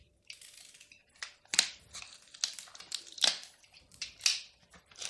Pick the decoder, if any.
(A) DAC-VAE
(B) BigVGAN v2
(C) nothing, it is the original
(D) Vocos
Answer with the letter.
C